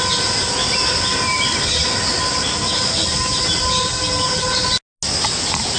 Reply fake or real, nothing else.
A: real